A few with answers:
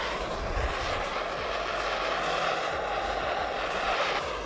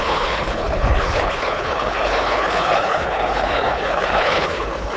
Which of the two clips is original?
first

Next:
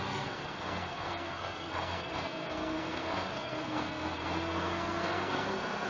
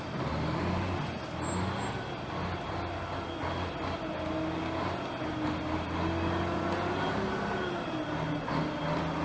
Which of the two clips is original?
second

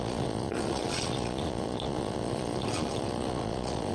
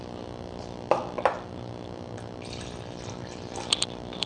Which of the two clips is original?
second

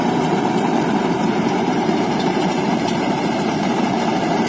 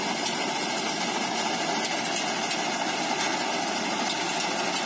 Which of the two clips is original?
second